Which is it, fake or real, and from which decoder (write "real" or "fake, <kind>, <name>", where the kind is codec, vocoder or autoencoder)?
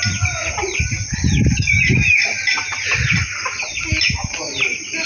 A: real